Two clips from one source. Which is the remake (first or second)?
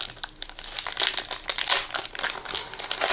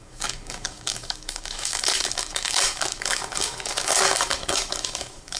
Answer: second